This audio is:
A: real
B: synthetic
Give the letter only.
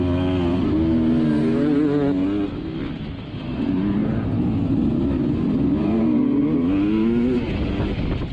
A